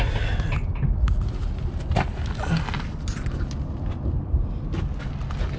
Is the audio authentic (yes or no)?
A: yes